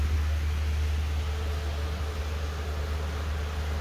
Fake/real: real